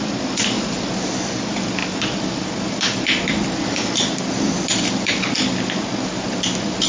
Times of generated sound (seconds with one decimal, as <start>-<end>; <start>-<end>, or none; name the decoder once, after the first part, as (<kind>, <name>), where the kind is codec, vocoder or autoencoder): none